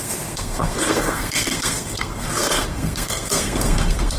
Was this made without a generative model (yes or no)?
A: no